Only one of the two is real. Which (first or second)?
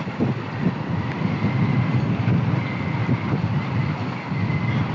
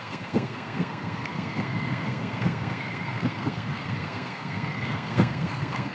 first